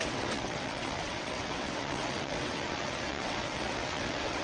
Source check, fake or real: fake